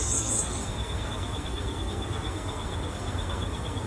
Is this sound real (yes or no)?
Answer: no